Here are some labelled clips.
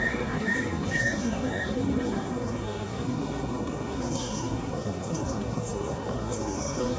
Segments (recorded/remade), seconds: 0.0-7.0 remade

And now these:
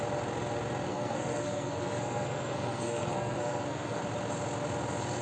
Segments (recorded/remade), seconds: 0.0-0.9 recorded; 0.9-4.0 remade; 4.0-5.2 recorded

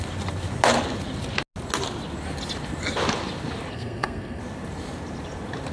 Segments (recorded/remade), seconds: 0.0-3.7 recorded; 3.7-4.4 remade; 4.4-5.7 recorded